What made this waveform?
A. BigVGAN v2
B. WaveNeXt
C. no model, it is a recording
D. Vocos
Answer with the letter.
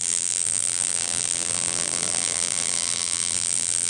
A